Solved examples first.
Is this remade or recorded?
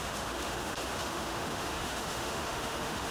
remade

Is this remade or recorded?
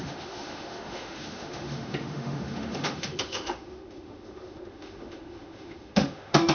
remade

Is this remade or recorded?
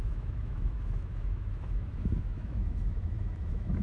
remade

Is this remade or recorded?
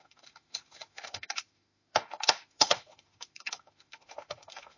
remade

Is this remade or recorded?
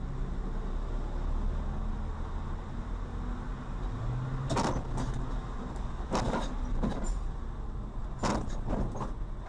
recorded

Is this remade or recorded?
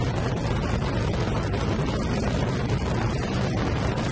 recorded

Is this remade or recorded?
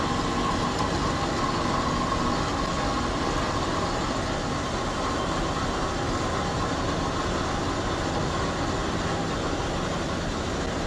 recorded